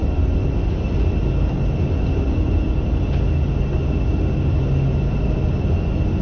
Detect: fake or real real